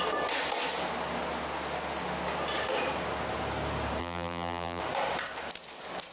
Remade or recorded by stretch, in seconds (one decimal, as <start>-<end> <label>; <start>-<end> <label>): 0.0-4.0 recorded; 4.0-4.8 remade; 4.8-6.1 recorded